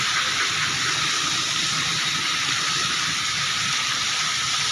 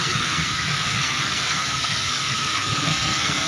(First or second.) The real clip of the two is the first